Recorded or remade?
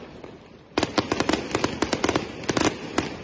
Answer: recorded